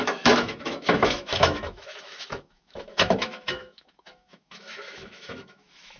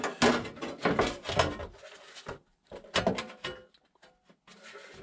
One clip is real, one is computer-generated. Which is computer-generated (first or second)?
first